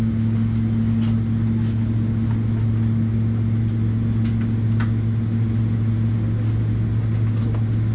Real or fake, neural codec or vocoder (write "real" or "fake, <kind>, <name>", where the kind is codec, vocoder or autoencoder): real